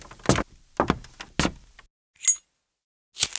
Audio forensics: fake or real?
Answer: real